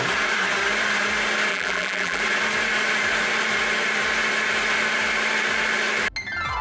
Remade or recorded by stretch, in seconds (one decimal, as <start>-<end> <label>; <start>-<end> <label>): 0.0-1.5 recorded; 1.5-2.2 remade; 2.2-6.6 recorded